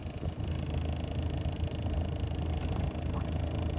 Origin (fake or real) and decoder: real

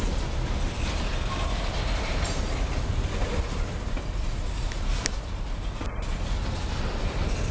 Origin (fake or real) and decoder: real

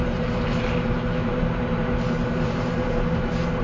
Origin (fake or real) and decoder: fake, vocoder, BigVGAN v2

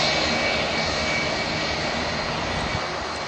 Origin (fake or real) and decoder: real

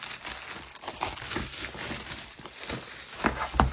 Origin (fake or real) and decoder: real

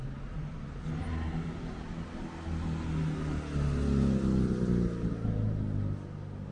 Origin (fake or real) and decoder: real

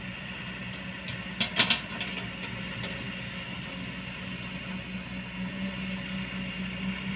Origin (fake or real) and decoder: real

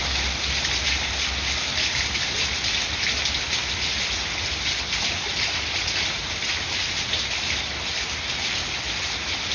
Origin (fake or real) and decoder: real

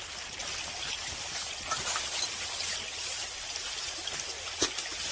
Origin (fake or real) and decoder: real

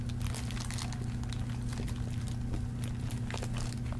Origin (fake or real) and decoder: real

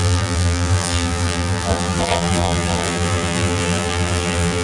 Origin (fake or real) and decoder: fake, vocoder, BigVGAN v2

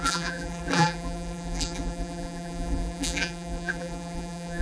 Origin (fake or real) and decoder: fake, vocoder, BigVGAN v2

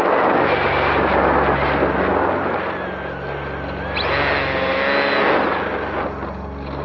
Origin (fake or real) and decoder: real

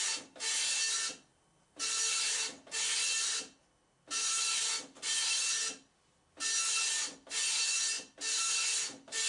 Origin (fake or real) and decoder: real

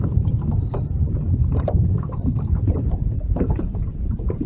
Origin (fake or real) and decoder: fake, vocoder, BigVGAN v2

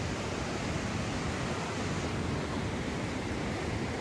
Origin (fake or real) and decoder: real